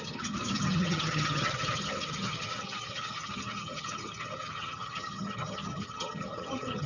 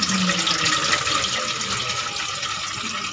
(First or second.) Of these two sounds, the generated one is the first